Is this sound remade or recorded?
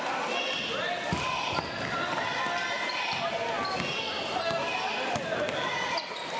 recorded